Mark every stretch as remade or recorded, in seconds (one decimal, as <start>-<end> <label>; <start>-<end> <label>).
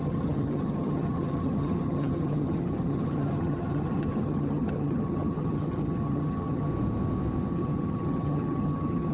0.0-6.7 remade; 6.7-7.5 recorded; 7.5-9.1 remade